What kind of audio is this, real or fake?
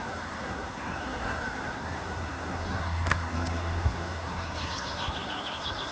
fake